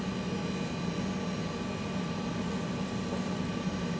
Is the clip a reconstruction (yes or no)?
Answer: no